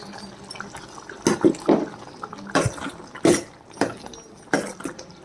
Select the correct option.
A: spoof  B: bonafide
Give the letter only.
B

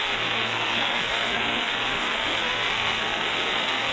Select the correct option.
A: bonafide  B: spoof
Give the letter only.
B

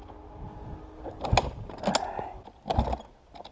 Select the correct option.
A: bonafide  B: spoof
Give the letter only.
A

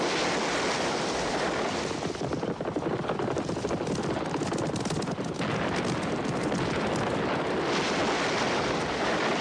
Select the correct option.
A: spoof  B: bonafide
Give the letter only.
B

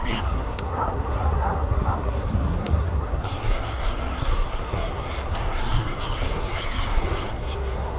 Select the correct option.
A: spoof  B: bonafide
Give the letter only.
A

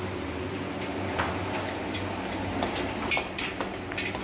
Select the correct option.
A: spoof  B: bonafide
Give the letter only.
B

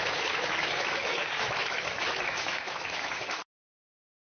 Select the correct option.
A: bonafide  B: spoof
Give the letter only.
B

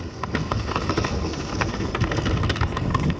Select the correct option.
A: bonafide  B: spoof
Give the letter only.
B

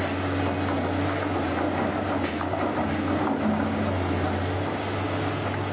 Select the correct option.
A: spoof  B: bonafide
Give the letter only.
B